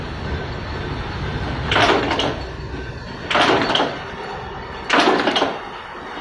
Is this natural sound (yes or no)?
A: yes